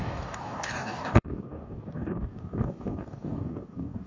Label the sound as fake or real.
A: fake